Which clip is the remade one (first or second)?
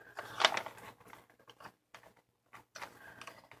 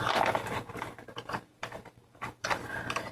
second